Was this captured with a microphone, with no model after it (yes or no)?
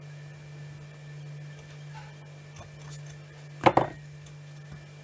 yes